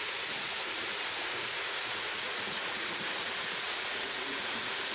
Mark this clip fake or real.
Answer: fake